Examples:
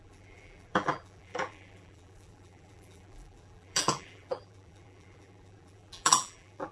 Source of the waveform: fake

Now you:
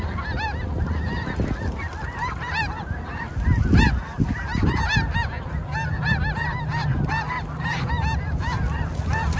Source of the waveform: real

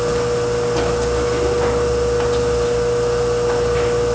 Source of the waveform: real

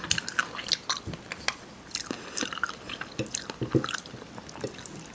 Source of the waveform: real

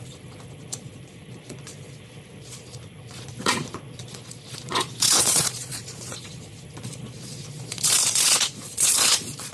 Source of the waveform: fake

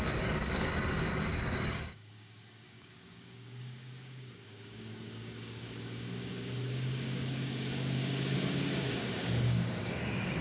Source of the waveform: fake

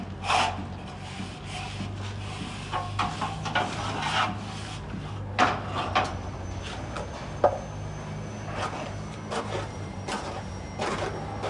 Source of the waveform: real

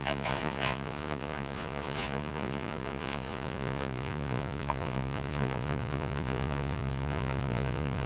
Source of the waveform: fake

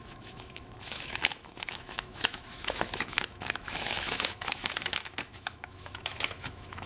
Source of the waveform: fake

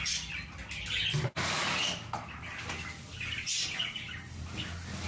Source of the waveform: real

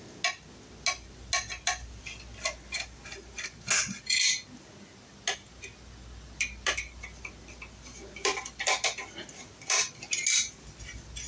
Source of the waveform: real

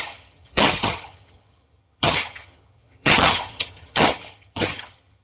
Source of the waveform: fake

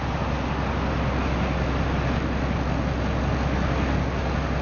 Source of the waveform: real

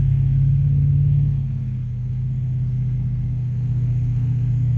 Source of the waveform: fake